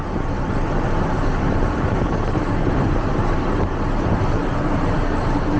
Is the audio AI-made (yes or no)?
yes